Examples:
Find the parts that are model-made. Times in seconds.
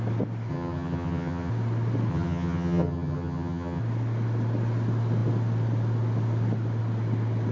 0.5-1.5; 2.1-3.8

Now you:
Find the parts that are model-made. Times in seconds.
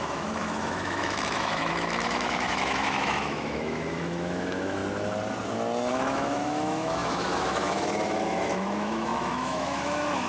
0.0-4.8; 5.9-10.3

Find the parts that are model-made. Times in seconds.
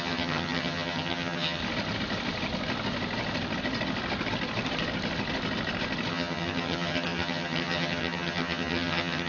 0.0-1.6; 6.1-9.3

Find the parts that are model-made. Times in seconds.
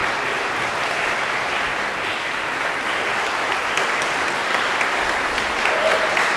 none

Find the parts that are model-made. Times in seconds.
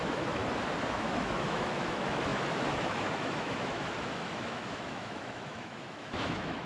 0.0-0.4; 0.9-6.7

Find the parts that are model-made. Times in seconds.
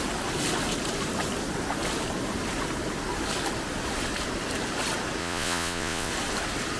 5.2-6.1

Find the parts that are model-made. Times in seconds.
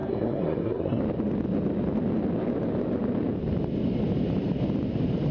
0.0-1.0